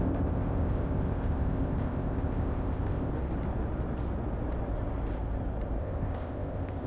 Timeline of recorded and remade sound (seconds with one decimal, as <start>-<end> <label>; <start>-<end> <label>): 0.0-3.1 remade; 3.1-5.8 recorded; 5.8-6.9 remade